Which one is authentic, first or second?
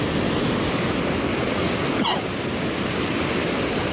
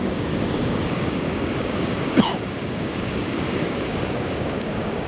first